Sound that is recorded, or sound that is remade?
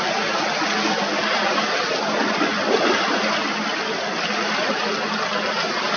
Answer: recorded